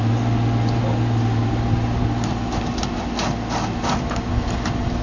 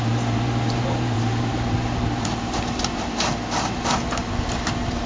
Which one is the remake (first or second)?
second